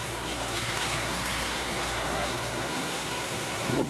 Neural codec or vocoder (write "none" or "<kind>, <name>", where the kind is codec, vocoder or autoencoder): codec, SNAC